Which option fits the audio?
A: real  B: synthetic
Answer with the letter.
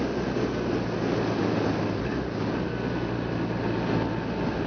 A